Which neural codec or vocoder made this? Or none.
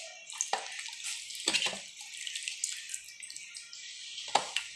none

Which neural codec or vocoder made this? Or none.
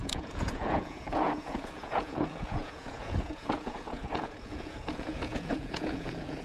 vocoder, Vocos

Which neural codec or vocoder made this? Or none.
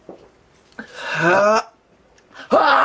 none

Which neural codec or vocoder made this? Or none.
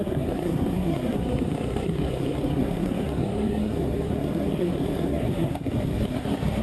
codec, SNAC